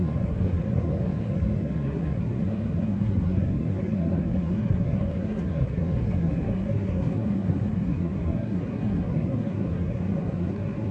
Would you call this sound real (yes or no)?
no